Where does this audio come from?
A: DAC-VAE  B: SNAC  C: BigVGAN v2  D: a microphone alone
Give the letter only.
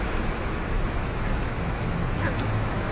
A